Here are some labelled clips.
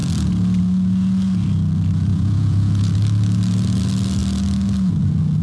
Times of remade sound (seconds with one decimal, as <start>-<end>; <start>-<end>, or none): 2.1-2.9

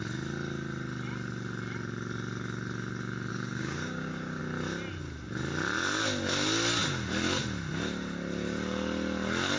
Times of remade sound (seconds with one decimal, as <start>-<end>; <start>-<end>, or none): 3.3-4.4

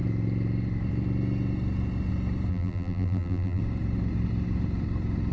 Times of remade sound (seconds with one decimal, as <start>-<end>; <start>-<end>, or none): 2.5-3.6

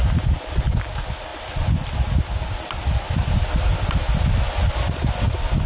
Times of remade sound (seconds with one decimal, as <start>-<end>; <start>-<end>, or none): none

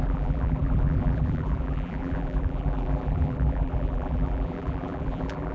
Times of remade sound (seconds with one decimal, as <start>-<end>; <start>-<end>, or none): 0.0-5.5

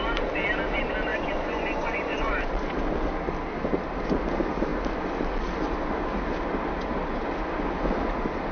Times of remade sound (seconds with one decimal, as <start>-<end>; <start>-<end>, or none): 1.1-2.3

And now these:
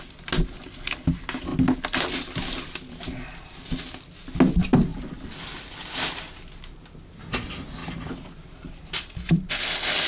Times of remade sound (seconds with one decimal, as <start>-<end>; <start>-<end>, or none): none

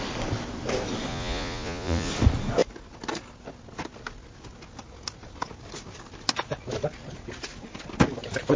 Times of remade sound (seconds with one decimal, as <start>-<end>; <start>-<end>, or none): 1.1-2.1